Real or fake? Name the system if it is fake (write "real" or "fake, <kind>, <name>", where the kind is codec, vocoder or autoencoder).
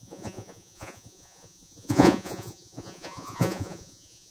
fake, vocoder, Vocos